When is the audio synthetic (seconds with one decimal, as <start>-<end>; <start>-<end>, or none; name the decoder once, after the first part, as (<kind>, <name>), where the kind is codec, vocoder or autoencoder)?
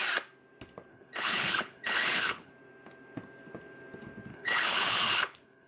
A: 0.9-2.5 (codec, HILCodec); 4.3-5.7